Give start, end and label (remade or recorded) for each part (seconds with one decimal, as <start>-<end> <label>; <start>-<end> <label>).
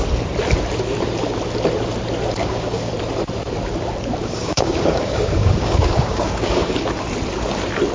0.0-2.4 recorded; 2.4-2.9 remade; 2.9-4.2 recorded; 4.2-6.8 remade; 6.8-7.9 recorded